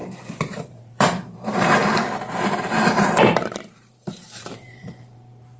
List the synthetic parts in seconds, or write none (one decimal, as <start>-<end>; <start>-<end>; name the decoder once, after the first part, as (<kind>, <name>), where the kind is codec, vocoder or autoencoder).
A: 0.0-5.6 (vocoder, BigVGAN v2)